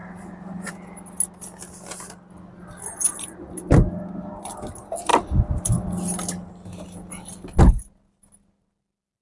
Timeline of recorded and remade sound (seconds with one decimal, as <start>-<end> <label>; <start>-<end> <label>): 0.0-0.7 remade; 0.7-9.2 recorded